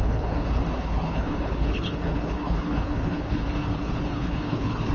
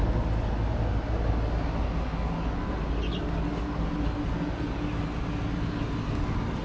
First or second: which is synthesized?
first